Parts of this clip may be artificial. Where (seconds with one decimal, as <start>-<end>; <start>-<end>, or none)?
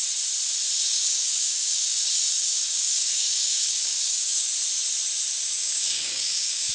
0.8-4.5; 5.4-6.7